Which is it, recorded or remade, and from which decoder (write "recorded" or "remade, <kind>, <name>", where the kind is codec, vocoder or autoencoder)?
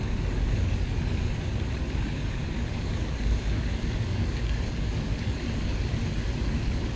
remade, codec, DAC